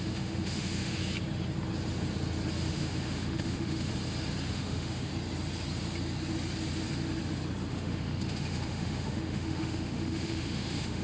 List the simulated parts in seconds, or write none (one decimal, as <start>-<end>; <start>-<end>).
0.0-1.0; 2.7-3.9; 4.5-5.1; 7.7-11.0